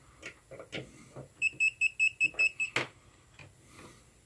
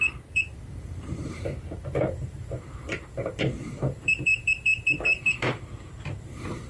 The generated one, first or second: second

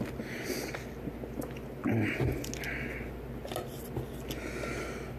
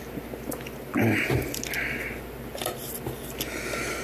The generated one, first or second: second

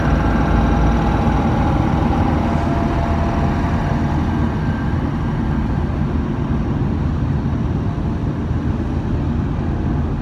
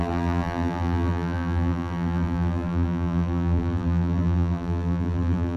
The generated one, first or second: second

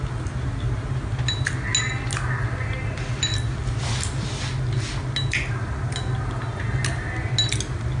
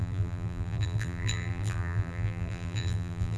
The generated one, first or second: second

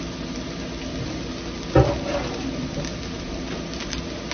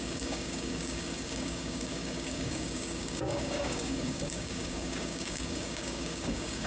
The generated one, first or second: second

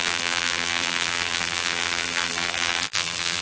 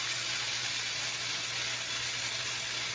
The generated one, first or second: first